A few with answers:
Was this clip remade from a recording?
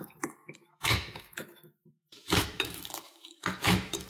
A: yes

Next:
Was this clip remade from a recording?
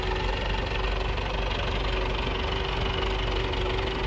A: no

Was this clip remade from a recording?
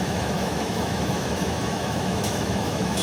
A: yes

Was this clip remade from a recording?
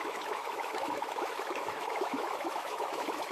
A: yes